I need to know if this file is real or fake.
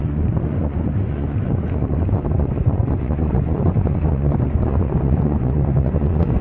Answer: fake